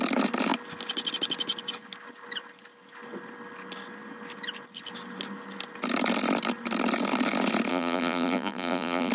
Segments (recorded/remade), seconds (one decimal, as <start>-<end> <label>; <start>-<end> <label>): 0.0-7.7 recorded; 7.7-9.1 remade